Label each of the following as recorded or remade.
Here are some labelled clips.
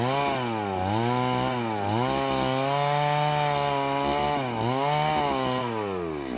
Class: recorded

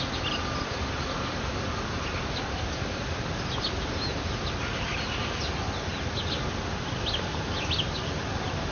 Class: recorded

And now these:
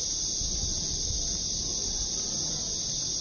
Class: recorded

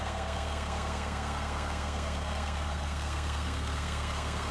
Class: remade